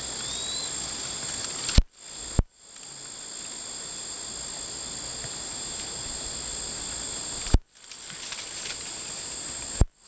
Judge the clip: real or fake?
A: real